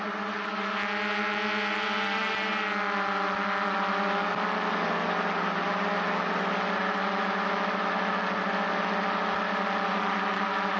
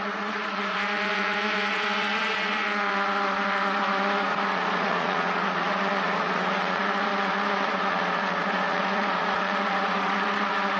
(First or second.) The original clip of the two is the first